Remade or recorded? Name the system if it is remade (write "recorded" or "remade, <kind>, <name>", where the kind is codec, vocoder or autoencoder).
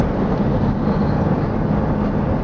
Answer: recorded